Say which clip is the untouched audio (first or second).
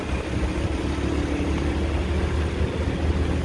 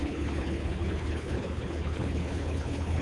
first